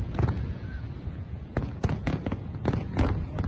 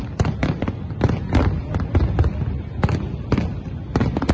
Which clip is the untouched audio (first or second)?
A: second